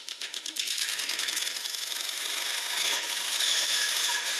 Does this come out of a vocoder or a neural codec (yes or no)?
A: yes